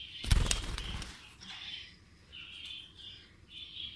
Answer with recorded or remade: recorded